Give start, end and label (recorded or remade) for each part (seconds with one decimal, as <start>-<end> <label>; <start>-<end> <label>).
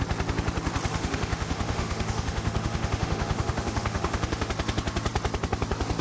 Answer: 0.0-0.9 recorded; 0.9-4.5 remade; 4.5-6.0 recorded